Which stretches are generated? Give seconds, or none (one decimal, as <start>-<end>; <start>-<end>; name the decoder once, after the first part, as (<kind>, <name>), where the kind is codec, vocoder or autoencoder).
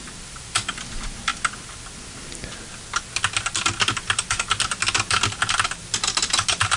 none